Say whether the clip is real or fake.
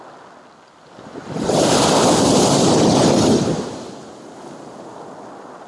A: real